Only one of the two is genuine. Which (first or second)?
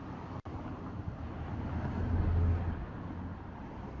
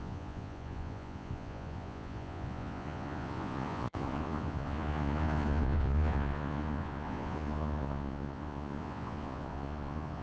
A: first